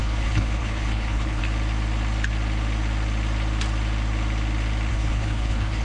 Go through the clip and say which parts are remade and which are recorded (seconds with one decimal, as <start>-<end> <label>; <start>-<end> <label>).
0.0-1.4 remade; 1.4-4.9 recorded; 4.9-5.8 remade

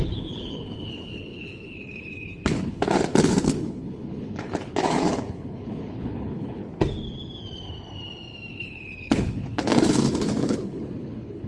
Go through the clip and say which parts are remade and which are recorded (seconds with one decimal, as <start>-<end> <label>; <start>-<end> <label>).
0.0-6.6 remade; 6.6-8.5 recorded; 8.5-11.5 remade

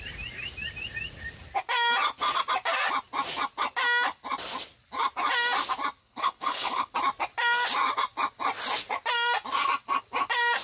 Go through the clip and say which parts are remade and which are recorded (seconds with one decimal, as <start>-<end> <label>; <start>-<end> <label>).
0.0-6.0 recorded; 6.0-6.9 remade; 6.9-10.6 recorded

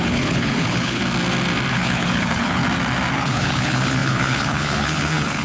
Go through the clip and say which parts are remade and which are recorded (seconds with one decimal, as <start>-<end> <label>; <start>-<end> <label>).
0.0-1.0 remade; 1.0-1.7 recorded; 1.7-2.6 remade; 2.6-3.1 recorded; 3.1-5.4 remade

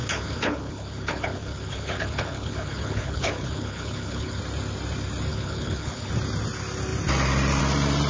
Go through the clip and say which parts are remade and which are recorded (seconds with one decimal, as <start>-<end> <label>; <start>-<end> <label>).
0.0-4.4 remade; 4.4-5.3 recorded; 5.3-6.1 remade; 6.1-8.1 recorded

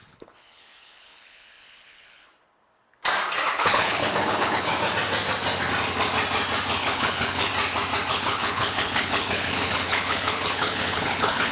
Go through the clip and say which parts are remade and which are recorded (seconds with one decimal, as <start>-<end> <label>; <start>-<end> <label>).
0.0-2.3 remade; 2.3-3.5 recorded; 3.5-4.7 remade; 4.7-6.7 recorded; 6.7-7.5 remade; 7.5-8.1 recorded; 8.1-11.5 remade